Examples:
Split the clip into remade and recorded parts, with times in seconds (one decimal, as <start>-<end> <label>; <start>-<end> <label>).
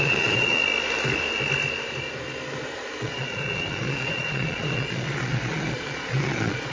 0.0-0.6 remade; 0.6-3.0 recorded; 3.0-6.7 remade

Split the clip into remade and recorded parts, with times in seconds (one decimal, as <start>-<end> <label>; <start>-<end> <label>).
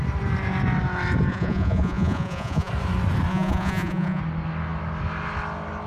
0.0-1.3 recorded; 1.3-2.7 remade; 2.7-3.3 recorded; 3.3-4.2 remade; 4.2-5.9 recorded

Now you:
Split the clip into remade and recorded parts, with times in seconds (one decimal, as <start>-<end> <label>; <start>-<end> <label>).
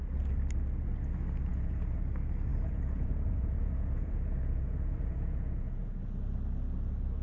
0.0-1.5 recorded; 1.5-2.0 remade; 2.0-2.5 recorded; 2.5-5.9 remade; 5.9-7.2 recorded